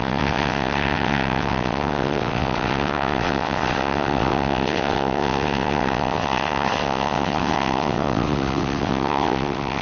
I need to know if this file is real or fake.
fake